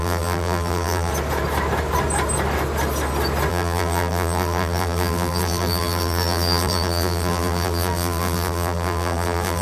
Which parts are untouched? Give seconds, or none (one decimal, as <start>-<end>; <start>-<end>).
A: 1.1-3.5